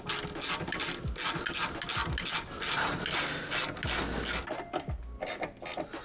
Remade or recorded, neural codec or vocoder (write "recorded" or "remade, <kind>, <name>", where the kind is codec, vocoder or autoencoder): recorded